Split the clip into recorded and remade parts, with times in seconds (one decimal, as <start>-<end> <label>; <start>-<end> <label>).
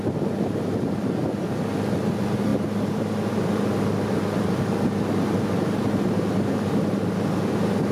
0.0-7.9 recorded